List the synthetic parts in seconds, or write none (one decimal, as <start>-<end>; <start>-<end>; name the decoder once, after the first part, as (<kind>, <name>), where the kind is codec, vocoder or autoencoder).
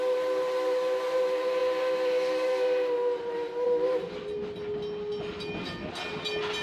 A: none